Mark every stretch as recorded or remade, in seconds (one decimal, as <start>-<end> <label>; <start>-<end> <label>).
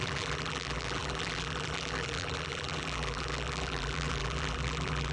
0.0-5.1 remade